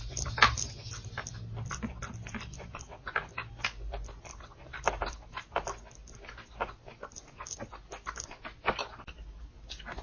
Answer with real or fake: real